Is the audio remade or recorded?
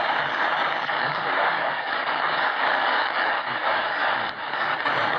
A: remade